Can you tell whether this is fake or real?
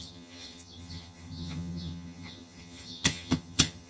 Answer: fake